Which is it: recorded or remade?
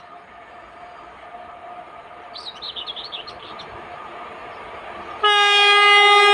recorded